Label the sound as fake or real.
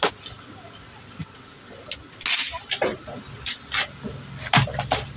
real